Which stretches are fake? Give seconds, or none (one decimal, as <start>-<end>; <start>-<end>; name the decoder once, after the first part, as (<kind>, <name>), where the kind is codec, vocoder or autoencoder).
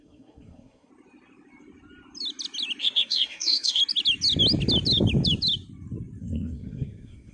0.0-0.9 (codec, SNAC); 2.8-3.8; 6.2-7.3